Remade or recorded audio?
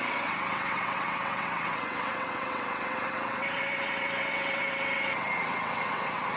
remade